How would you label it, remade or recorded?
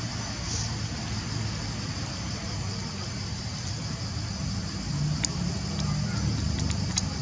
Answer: recorded